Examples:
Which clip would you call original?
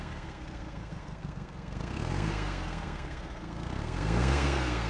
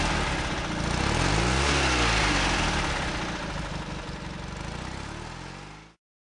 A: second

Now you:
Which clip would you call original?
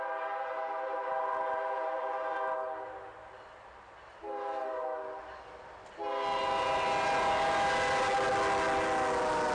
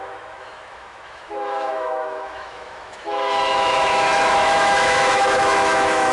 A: first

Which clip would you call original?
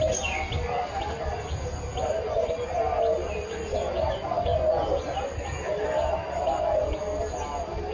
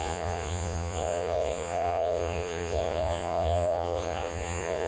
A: first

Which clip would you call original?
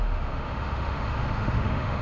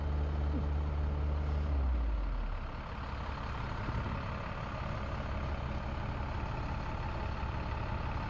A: second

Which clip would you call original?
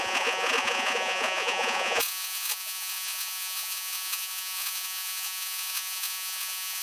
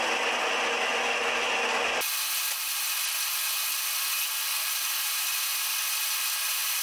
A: second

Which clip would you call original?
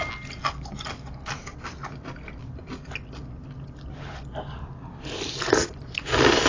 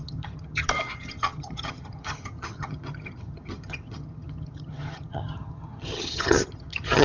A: first